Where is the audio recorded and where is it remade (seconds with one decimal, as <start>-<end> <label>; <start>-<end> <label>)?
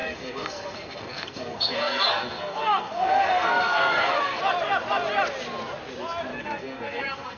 0.0-4.4 remade; 4.4-6.3 recorded; 6.3-7.4 remade